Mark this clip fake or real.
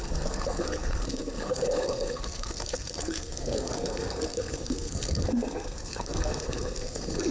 fake